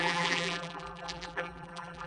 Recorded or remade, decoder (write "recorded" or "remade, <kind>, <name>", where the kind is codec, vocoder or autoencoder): remade, vocoder, BigVGAN v2